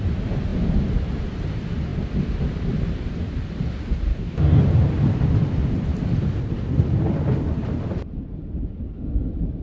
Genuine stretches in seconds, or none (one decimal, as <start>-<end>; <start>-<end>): 0.0-4.1; 4.6-9.6